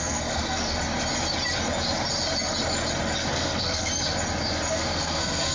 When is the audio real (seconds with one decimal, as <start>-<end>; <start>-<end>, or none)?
0.8-3.3; 3.9-4.7